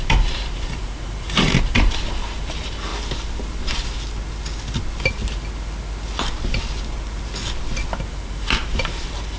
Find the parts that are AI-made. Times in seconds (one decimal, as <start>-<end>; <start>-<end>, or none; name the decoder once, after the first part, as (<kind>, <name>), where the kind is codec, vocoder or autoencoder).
0.0-2.9 (vocoder, BigVGAN v2); 8.1-9.4